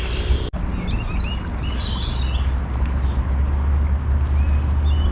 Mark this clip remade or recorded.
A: recorded